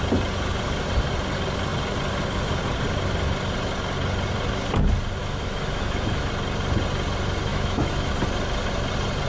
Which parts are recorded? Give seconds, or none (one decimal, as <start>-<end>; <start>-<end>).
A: 0.0-5.2; 6.3-7.5; 8.1-9.3